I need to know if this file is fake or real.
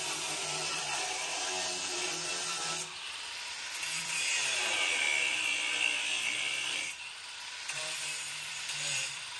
fake